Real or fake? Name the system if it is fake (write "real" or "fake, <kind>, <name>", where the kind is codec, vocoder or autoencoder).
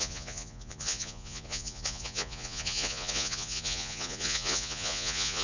fake, vocoder, Vocos